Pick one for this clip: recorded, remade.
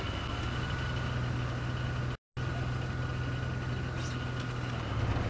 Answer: recorded